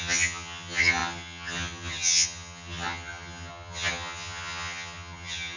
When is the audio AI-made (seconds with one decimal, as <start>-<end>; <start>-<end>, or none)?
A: 0.0-5.6